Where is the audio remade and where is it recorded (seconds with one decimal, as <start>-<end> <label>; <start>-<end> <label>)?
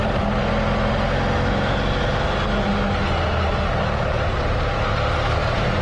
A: 0.0-5.8 recorded